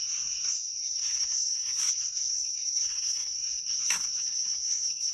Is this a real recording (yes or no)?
no